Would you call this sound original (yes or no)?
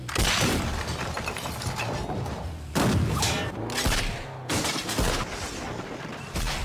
yes